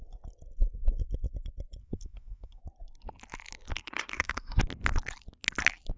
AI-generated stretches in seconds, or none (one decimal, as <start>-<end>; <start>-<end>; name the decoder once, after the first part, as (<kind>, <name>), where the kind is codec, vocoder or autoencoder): 1.8-2.6 (codec, SNAC); 3.7-4.6